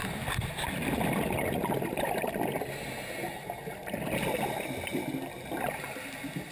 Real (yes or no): yes